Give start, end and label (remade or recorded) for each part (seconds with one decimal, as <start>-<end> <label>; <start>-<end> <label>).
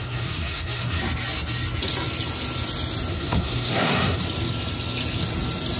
0.0-1.0 remade; 1.0-3.1 recorded; 3.1-4.2 remade; 4.2-5.8 recorded